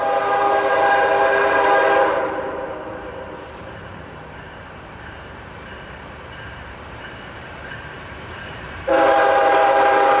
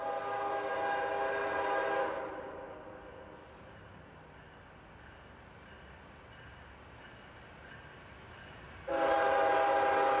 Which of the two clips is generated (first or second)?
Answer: first